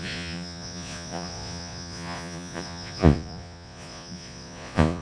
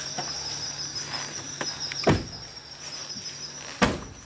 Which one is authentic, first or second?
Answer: second